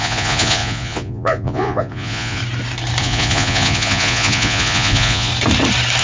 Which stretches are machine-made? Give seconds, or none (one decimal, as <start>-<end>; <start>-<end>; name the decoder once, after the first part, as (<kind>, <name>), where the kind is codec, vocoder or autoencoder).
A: 0.0-2.4 (vocoder, Vocos); 3.0-5.3